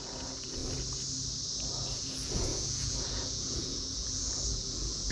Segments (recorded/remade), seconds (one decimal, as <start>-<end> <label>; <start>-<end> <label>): 0.0-0.6 remade; 0.6-1.9 recorded; 1.9-5.1 remade